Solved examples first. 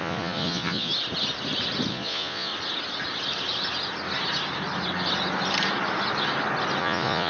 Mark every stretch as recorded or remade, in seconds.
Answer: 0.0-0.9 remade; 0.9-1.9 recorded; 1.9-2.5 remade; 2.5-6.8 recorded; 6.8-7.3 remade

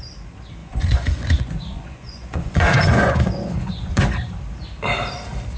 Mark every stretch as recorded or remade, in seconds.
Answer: 0.0-0.6 recorded; 0.6-4.0 remade; 4.0-5.6 recorded

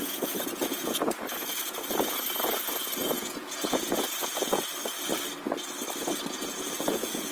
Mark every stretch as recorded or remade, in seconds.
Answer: 0.0-4.7 remade; 4.7-6.3 recorded; 6.3-7.3 remade

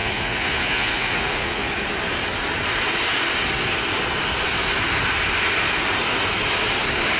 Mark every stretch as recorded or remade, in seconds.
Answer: 0.0-1.7 remade; 1.7-7.2 recorded

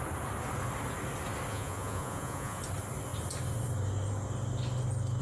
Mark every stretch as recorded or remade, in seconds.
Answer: 0.0-1.5 recorded; 1.5-2.6 remade; 2.6-5.2 recorded

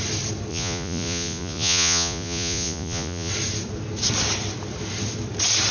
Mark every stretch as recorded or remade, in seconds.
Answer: 0.0-0.5 recorded; 0.5-3.3 remade; 3.3-5.7 recorded

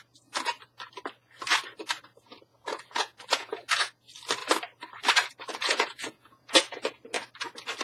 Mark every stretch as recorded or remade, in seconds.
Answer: 0.0-2.5 recorded; 2.5-3.9 remade; 3.9-5.6 recorded; 5.6-7.0 remade; 7.0-7.8 recorded